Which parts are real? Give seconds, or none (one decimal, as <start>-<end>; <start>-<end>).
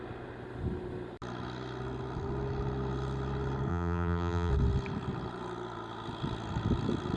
0.0-3.7; 4.5-7.2